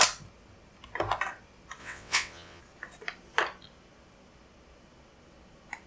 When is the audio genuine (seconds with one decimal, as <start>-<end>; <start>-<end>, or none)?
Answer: 0.0-1.8; 2.6-5.9